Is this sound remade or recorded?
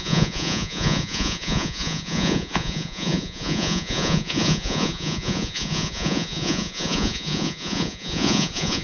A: remade